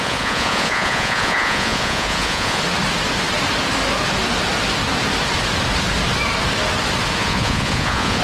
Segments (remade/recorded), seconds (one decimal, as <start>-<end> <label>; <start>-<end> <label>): 0.0-2.6 remade; 2.6-7.2 recorded; 7.2-8.2 remade